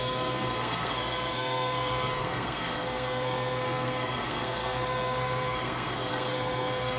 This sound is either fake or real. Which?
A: fake